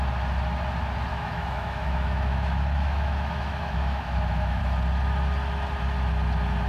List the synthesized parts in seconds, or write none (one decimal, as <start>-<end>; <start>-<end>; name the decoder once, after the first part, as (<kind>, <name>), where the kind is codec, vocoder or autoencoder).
1.1-4.6 (autoencoder, DAC-VAE)